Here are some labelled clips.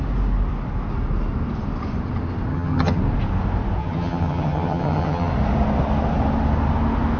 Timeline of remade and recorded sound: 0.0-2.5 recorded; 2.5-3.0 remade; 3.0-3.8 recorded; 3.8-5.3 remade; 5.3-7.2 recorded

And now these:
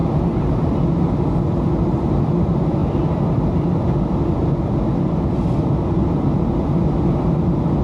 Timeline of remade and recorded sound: 0.0-7.8 recorded

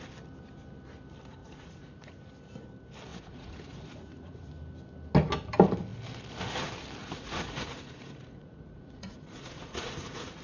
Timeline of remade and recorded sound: 0.0-1.4 recorded; 1.4-2.2 remade; 2.2-3.1 recorded; 3.1-4.5 remade; 4.5-7.0 recorded; 7.0-10.4 remade

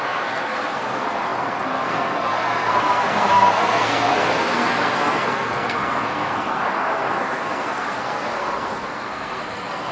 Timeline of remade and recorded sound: 0.0-9.9 remade